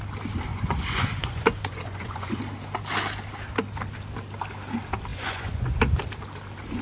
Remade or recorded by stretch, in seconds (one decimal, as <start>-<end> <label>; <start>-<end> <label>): 0.0-0.5 recorded; 0.5-2.4 remade; 2.4-5.1 recorded; 5.1-5.8 remade; 5.8-6.8 recorded